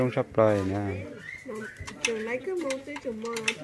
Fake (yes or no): no